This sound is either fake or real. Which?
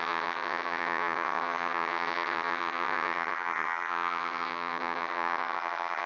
fake